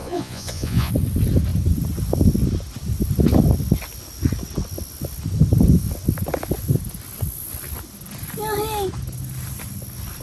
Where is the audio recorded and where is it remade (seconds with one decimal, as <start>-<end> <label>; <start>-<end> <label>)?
0.0-0.9 remade; 0.9-10.2 recorded